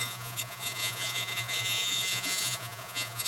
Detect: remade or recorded remade